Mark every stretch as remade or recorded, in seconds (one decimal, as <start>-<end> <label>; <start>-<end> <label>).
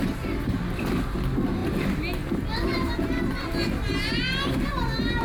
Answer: 0.0-5.2 recorded